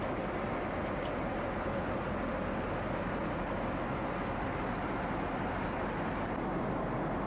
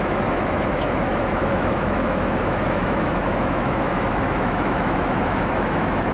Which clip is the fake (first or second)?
second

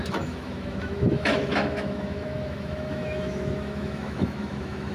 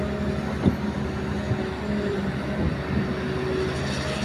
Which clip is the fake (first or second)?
first